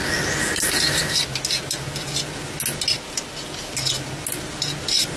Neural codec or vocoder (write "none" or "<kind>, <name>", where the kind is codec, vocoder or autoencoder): none